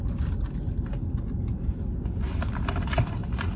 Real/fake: real